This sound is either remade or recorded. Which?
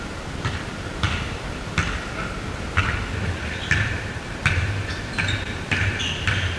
remade